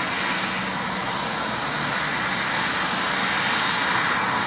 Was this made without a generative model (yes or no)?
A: yes